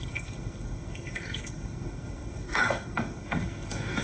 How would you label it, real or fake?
fake